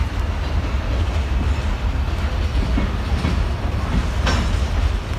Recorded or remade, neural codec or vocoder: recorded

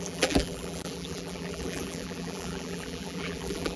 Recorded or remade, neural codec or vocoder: remade, vocoder, BigVGAN v2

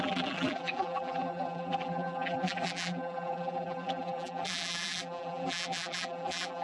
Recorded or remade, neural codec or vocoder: remade, vocoder, BigVGAN v2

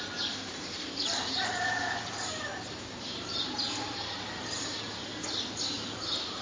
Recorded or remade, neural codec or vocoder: remade, vocoder, BigVGAN v2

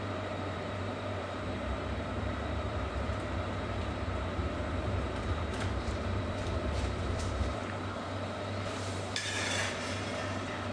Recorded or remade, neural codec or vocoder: remade, vocoder, BigVGAN v2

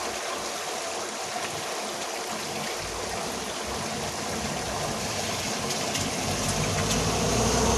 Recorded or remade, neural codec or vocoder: recorded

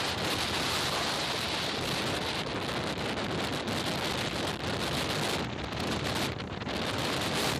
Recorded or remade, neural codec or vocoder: recorded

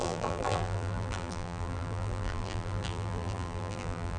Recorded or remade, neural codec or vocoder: remade, vocoder, BigVGAN v2